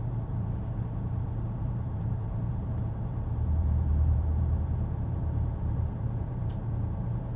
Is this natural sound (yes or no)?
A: no